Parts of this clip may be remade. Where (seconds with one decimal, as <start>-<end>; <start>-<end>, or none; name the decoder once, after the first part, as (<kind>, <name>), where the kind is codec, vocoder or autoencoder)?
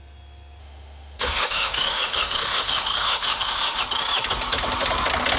0.6-3.8 (autoencoder, DAC-VAE)